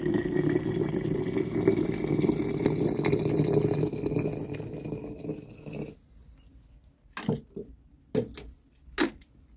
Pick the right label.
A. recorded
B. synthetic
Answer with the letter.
A